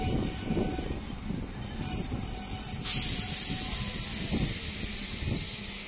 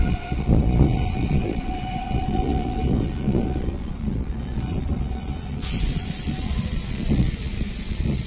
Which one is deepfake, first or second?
second